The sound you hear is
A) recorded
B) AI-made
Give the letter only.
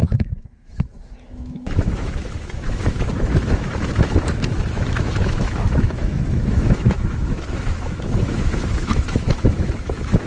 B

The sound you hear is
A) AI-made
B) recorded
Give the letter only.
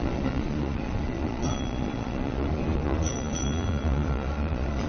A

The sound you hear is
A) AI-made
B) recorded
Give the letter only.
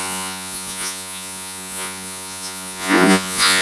A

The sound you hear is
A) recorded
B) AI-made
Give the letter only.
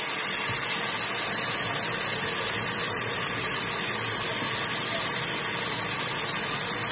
A